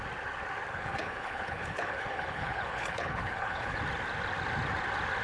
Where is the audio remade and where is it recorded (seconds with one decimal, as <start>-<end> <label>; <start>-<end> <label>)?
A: 0.0-0.7 recorded; 0.7-3.8 remade; 3.8-5.2 recorded